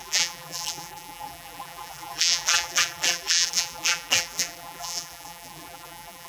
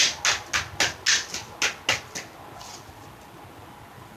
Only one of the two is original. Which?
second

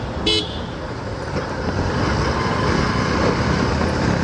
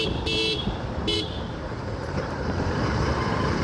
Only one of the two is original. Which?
first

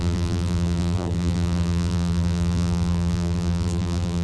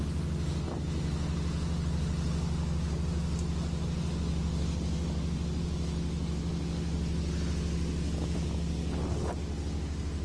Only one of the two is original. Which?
second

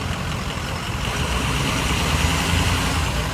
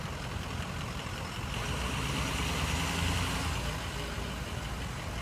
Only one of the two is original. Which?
second